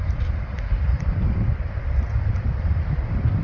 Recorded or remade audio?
remade